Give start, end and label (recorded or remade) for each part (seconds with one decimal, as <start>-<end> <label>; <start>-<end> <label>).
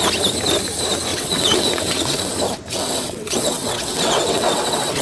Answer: 0.0-1.1 recorded; 1.1-2.3 remade; 2.3-2.7 recorded; 2.7-5.0 remade